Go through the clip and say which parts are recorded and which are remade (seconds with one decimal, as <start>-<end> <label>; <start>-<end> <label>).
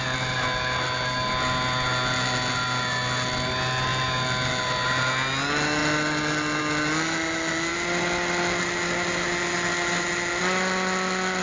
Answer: 0.0-11.4 recorded